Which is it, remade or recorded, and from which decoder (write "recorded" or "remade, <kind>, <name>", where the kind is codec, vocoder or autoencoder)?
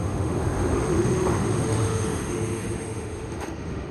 remade, autoencoder, DAC-VAE